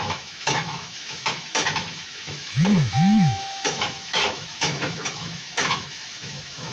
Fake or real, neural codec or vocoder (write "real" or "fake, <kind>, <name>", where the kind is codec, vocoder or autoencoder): fake, autoencoder, DAC-VAE